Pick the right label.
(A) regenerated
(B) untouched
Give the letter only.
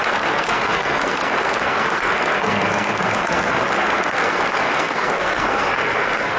A